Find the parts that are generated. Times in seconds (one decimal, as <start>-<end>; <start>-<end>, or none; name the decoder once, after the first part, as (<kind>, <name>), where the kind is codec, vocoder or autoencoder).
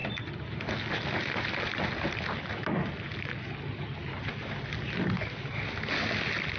none